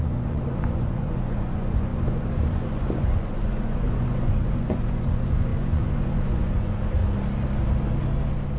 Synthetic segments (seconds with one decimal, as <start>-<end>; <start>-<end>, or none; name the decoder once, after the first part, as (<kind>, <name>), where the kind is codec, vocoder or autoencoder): 0.0-7.0 (vocoder, Vocos)